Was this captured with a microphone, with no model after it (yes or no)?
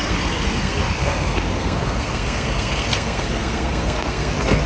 no